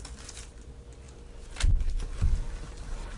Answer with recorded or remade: recorded